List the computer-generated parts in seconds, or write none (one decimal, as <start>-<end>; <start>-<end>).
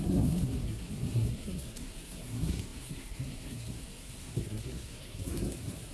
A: 0.0-5.9